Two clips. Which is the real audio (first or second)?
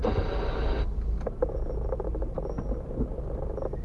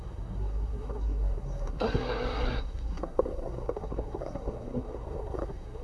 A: first